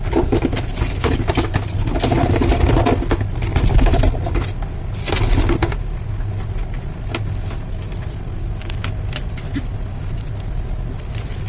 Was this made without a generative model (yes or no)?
yes